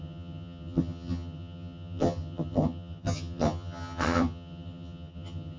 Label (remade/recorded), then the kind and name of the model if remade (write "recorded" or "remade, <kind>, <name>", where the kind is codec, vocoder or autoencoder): remade, vocoder, HiFi-GAN